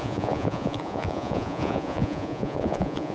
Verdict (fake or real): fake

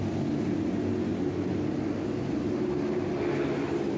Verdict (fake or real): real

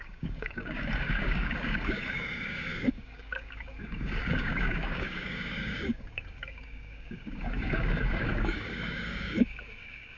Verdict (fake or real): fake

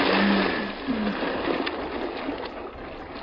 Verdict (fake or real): real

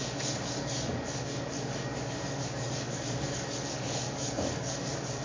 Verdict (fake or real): fake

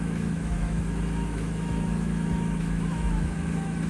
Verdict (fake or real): fake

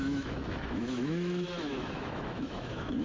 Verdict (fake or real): fake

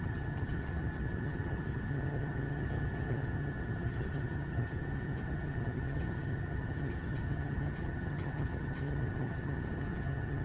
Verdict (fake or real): fake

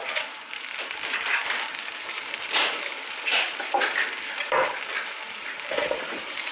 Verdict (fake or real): fake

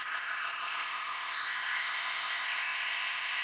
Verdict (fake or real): fake